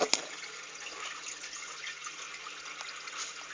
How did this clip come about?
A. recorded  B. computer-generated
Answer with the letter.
A